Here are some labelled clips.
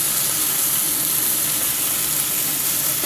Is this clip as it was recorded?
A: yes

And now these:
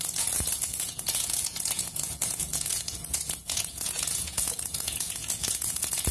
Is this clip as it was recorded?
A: no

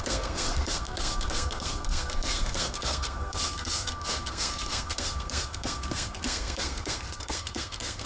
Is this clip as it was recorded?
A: no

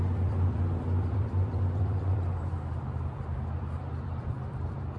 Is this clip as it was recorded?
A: no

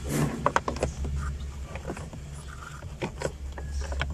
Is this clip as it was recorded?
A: yes